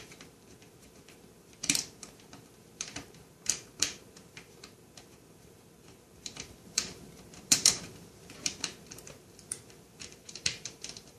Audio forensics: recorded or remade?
remade